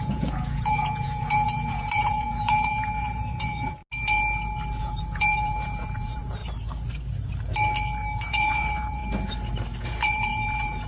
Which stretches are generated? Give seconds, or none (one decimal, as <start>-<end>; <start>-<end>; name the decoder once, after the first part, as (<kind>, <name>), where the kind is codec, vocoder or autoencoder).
0.0-3.8 (vocoder, Vocos); 4.8-6.4; 8.3-9.0; 9.8-10.9